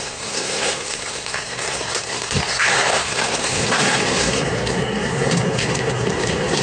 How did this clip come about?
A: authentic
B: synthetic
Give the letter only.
B